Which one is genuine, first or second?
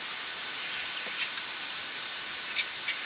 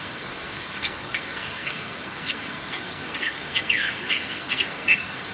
first